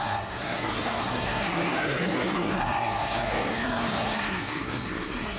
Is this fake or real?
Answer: fake